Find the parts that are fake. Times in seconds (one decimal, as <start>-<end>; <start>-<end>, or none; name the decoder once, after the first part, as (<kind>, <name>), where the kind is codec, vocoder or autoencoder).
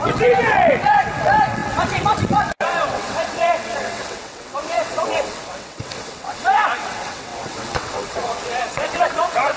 0.0-9.6 (vocoder, WaveNeXt)